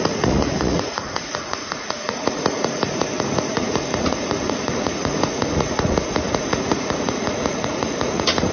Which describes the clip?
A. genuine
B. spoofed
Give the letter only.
B